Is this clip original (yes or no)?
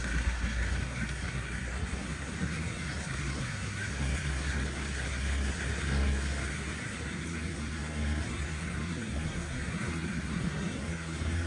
no